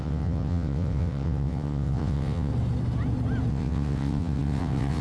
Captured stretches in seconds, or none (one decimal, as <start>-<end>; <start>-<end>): 2.5-3.5